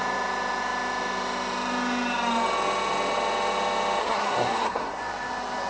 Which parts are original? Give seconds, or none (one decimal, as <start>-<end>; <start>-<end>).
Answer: 0.0-4.0; 5.0-5.7